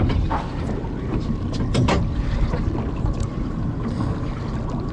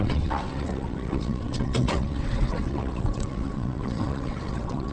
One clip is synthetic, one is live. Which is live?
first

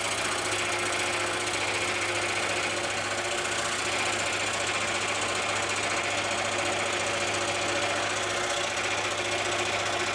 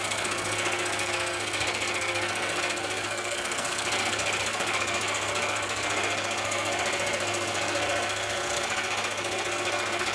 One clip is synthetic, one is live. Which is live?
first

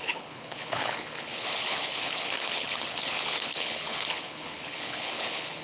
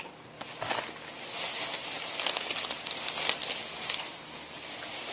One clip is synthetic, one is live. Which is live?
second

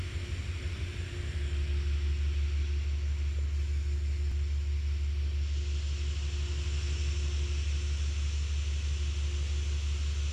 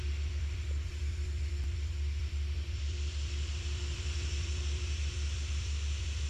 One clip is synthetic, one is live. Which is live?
first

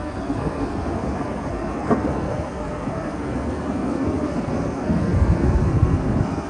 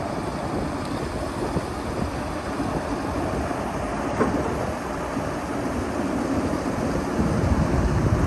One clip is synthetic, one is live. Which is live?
second